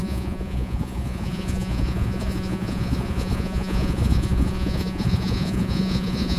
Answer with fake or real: fake